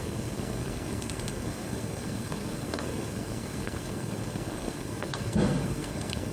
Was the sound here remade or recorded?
remade